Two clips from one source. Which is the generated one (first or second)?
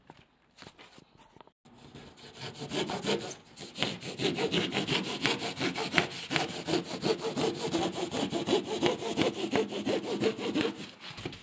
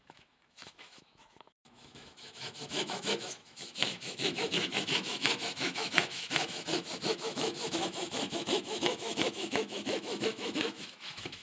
second